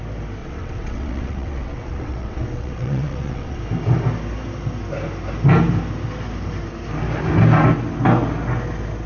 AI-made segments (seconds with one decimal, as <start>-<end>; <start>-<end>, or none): 0.4-3.6